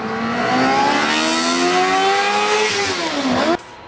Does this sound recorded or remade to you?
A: recorded